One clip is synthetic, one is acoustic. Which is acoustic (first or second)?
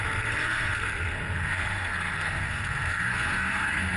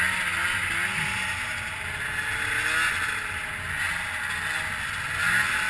second